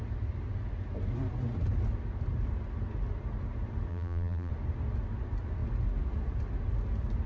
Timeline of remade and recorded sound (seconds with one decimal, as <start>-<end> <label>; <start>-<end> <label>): 0.0-3.9 recorded; 3.9-4.5 remade; 4.5-7.3 recorded